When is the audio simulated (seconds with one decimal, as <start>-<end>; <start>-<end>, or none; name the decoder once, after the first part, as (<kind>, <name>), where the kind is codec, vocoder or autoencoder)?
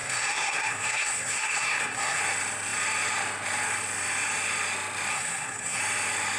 0.0-2.2 (codec, SNAC); 5.1-5.8